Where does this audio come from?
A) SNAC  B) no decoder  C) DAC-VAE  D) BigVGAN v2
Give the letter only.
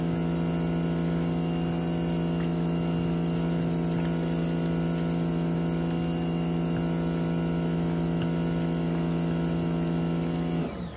B